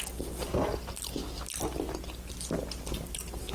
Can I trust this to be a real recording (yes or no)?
yes